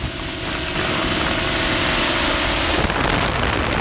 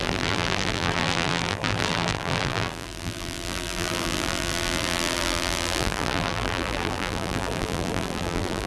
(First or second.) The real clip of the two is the first